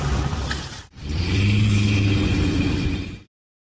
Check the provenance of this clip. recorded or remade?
remade